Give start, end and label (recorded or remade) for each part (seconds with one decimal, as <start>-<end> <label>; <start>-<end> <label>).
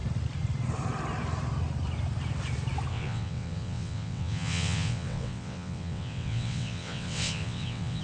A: 0.0-2.9 recorded; 2.9-8.0 remade